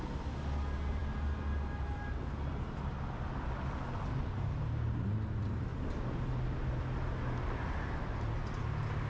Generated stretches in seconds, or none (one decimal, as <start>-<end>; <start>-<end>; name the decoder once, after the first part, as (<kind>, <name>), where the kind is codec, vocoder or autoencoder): none